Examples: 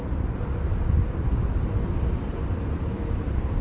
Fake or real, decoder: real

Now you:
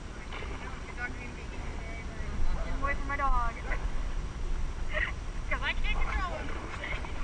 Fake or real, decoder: real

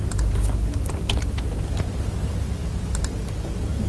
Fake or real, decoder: real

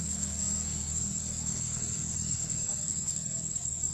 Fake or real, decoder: fake, codec, SNAC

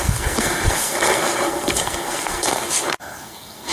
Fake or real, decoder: fake, codec, SNAC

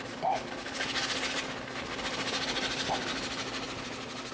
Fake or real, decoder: real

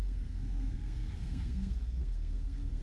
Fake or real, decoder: fake, codec, SNAC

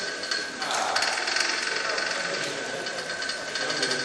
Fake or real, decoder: real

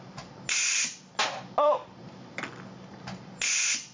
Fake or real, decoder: real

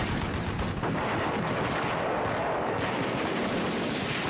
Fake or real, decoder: real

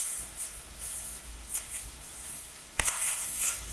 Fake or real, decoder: fake, codec, SNAC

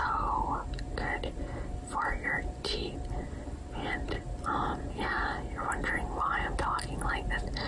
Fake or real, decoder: real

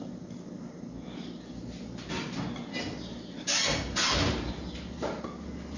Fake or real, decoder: real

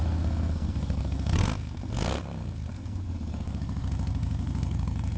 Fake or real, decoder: fake, codec, SNAC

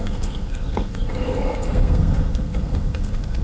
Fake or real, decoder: fake, codec, SNAC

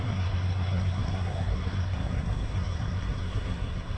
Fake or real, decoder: fake, codec, SNAC